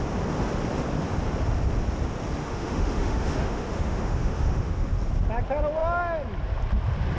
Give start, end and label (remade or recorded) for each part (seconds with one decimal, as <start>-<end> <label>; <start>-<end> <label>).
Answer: 0.0-2.4 recorded; 2.4-4.9 remade; 4.9-7.2 recorded